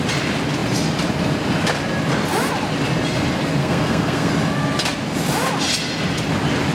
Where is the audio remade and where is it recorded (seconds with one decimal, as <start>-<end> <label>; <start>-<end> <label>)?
0.0-3.6 recorded; 3.6-4.3 remade; 4.3-6.7 recorded